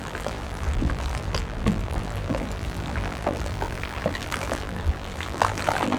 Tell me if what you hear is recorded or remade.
remade